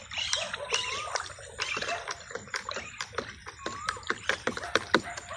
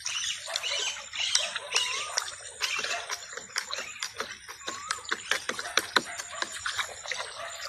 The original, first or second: first